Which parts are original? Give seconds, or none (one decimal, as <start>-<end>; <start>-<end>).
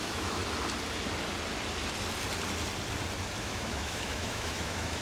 0.4-3.4